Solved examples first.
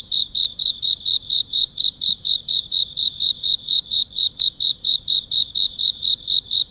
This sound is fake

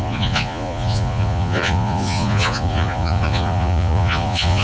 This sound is fake